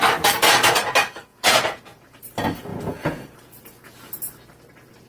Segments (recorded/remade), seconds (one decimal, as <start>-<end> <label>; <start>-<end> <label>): 0.0-1.3 recorded; 1.3-2.2 remade; 2.2-2.7 recorded; 2.7-4.1 remade; 4.1-5.1 recorded